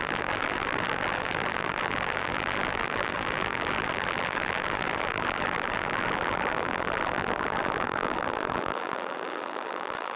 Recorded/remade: remade